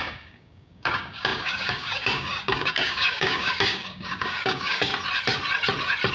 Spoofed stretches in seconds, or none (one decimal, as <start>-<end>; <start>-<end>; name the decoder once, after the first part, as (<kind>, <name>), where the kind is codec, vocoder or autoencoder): 0.0-4.9 (codec, DAC)